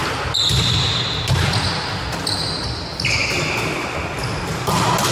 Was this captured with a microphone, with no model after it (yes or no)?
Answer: yes